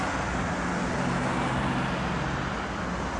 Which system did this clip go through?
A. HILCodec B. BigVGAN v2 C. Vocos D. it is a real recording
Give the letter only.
D